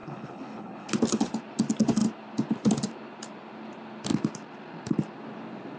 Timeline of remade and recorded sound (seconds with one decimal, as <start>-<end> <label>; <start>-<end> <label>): 0.0-0.9 remade; 0.9-5.8 recorded